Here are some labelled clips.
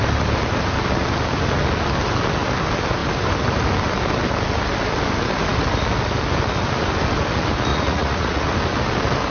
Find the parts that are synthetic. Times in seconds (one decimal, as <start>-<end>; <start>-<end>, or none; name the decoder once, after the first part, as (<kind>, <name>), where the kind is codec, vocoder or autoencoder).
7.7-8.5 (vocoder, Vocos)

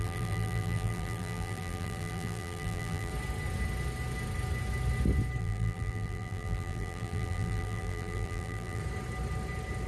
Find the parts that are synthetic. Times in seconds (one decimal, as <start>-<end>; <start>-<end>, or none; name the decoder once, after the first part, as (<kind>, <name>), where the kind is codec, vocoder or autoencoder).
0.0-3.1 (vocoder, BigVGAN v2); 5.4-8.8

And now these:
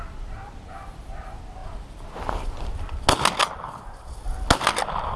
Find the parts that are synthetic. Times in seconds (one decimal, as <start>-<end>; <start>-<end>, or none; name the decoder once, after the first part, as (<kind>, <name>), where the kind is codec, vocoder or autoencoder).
none